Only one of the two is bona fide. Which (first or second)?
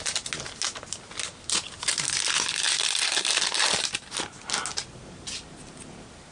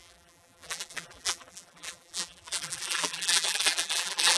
first